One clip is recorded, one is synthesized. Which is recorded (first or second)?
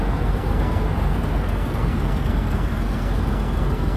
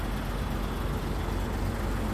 second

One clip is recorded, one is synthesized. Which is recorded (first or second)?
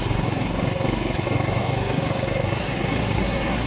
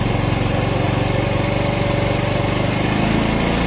second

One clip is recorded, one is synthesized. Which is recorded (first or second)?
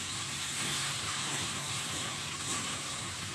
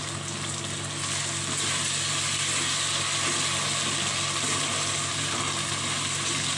second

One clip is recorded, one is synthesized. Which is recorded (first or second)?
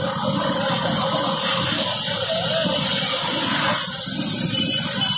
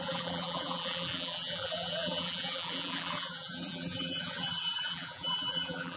first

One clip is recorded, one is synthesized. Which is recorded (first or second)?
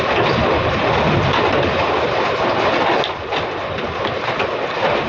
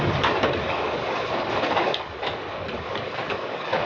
first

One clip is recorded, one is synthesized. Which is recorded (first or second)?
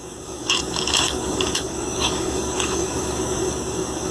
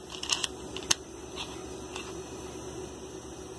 second